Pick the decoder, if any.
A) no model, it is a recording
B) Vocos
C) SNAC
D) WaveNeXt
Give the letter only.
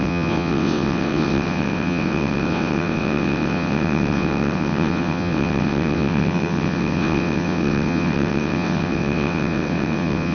D